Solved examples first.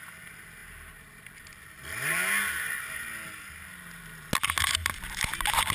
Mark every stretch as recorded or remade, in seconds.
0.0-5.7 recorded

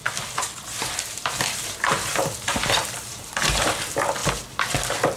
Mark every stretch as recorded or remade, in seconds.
0.0-0.7 recorded; 0.7-3.8 remade; 3.8-5.2 recorded